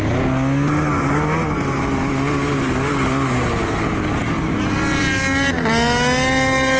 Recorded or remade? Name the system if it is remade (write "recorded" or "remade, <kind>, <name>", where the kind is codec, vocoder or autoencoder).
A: recorded